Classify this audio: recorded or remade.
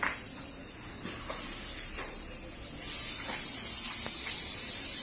recorded